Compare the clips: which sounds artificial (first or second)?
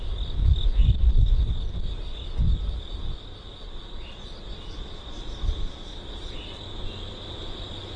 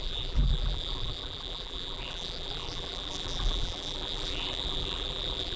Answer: second